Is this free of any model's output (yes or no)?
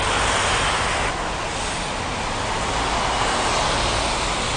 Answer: yes